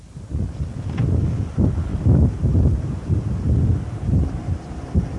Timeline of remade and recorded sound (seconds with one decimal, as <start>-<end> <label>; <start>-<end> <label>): 0.0-1.9 recorded; 1.9-3.2 remade; 3.2-5.2 recorded